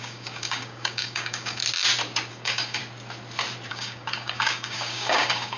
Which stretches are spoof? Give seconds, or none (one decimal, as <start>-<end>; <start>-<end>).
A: 0.0-1.6; 2.3-2.8; 3.7-5.6